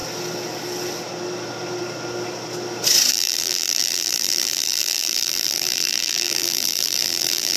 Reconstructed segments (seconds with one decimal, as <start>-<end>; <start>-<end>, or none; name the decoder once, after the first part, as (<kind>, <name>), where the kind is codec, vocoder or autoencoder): 3.1-7.6 (vocoder, BigVGAN v2)